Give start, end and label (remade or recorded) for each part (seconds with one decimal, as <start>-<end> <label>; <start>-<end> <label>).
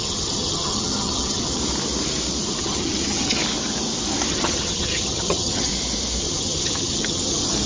0.0-1.6 remade; 1.6-2.6 recorded; 2.6-3.4 remade; 3.4-4.3 recorded; 4.3-5.7 remade; 5.7-6.2 recorded; 6.2-7.7 remade